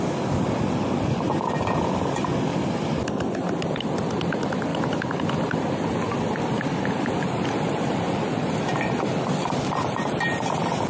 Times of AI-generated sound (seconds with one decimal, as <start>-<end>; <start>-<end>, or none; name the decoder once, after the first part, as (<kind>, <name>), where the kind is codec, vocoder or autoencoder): 2.5-3.1 (vocoder, BigVGAN v2)